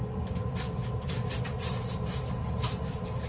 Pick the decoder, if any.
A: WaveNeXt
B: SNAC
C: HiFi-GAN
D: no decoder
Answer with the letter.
D